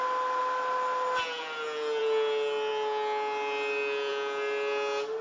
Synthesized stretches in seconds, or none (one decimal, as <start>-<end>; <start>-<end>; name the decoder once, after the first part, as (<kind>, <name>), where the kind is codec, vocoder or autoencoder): none